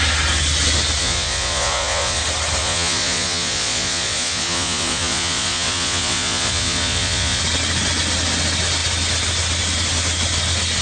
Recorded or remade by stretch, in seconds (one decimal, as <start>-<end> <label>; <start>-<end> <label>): 0.0-1.0 recorded; 1.0-2.2 remade; 2.2-2.6 recorded; 2.6-7.4 remade; 7.4-10.8 recorded